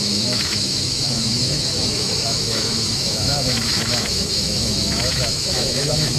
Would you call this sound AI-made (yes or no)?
yes